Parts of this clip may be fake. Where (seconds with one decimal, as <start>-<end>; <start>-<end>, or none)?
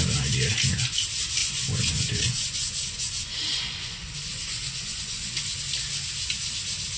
1.4-5.6